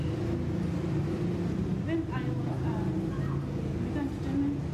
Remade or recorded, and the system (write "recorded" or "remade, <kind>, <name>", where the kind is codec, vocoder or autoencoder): recorded